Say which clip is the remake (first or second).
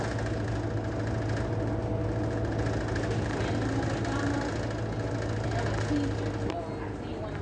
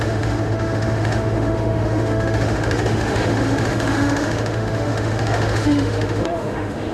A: second